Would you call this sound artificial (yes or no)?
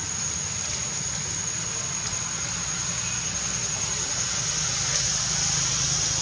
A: no